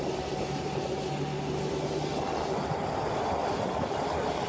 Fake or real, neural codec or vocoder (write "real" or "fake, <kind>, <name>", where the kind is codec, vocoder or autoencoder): real